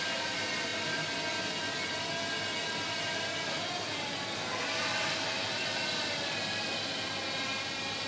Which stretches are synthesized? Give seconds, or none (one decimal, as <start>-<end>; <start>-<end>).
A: none